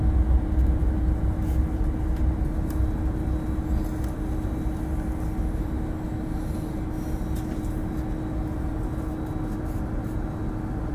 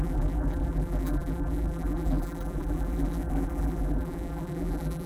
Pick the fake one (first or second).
second